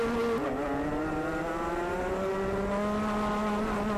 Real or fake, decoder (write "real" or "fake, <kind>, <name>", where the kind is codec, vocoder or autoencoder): real